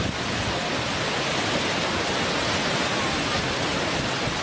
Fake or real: real